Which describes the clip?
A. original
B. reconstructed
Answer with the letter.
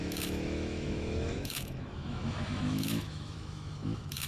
B